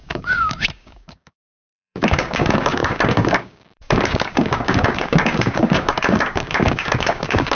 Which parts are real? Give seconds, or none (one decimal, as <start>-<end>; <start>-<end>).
none